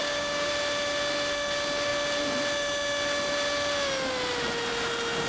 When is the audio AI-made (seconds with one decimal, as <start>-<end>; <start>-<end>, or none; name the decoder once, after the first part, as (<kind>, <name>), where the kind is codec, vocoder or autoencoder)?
0.0-0.5 (codec, DAC)